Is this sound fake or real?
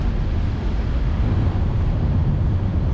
real